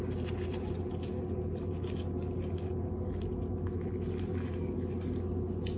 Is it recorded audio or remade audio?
recorded